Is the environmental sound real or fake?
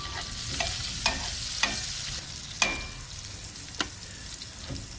real